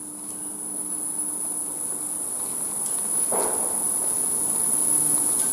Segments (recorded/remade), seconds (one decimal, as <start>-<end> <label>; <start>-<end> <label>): 0.0-5.5 recorded